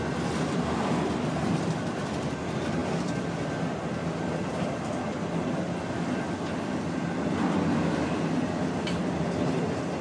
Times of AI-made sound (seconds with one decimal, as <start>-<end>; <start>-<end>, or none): none